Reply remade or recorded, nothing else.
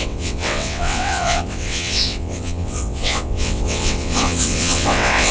remade